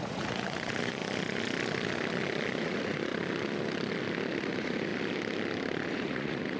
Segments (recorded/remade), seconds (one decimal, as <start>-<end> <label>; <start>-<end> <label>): 0.0-1.0 remade; 1.0-2.6 recorded; 2.6-3.1 remade; 3.1-4.4 recorded; 4.4-4.9 remade; 4.9-5.9 recorded; 5.9-6.6 remade

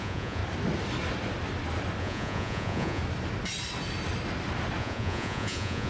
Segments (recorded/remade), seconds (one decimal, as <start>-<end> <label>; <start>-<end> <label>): 0.0-0.4 remade; 0.4-2.0 recorded; 2.0-3.0 remade; 3.0-4.8 recorded; 4.8-5.9 remade

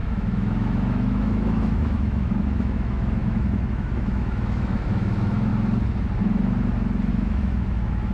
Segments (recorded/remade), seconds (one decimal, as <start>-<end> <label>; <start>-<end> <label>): 0.0-5.5 remade; 5.5-7.1 recorded; 7.1-8.1 remade

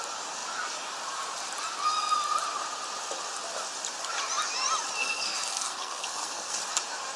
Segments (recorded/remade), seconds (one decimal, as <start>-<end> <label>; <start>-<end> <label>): 0.0-5.0 recorded; 5.0-6.6 remade; 6.6-7.2 recorded

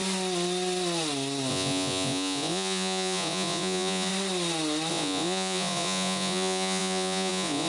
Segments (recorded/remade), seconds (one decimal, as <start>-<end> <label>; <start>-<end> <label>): 0.0-1.5 recorded; 1.5-4.1 remade; 4.1-4.9 recorded; 4.9-7.7 remade

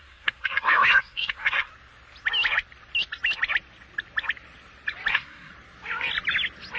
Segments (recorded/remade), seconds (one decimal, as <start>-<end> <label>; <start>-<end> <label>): 0.0-1.7 remade; 1.7-5.1 recorded; 5.1-5.5 remade; 5.5-6.8 recorded

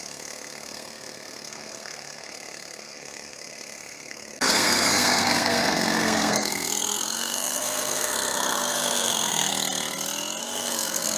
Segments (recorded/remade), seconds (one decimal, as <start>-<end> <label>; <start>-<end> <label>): 0.0-9.5 remade; 9.5-10.4 recorded; 10.4-11.2 remade